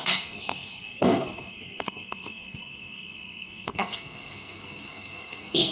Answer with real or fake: fake